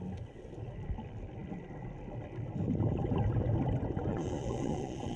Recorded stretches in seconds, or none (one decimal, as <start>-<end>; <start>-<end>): 0.0-4.1